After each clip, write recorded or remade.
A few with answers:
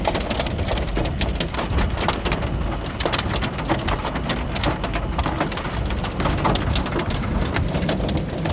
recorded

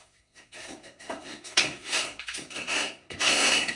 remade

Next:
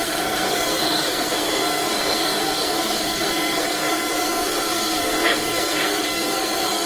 remade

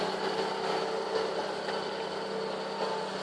recorded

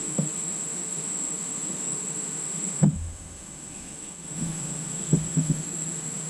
remade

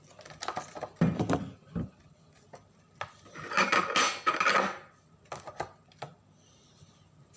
recorded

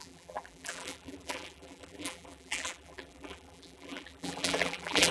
remade